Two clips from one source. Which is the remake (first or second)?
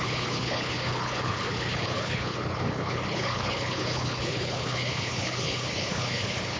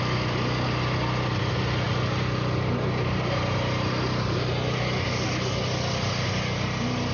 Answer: first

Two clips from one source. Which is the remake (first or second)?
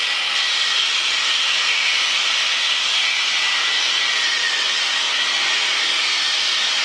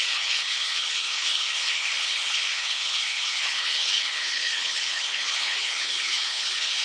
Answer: second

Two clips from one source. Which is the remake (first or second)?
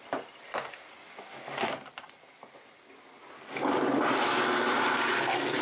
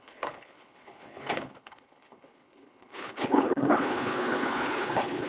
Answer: second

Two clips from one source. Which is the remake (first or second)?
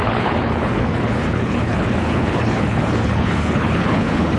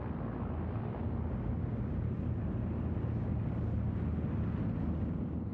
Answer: first